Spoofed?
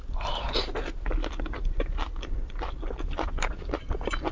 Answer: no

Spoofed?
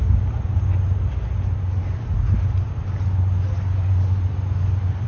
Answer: no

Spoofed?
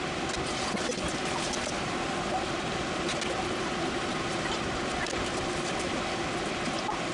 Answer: no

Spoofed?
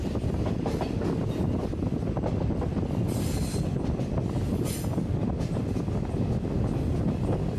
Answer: no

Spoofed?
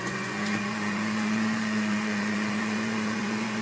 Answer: yes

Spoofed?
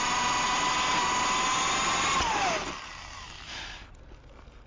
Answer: no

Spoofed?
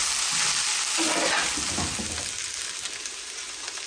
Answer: no